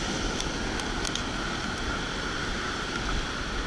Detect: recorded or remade recorded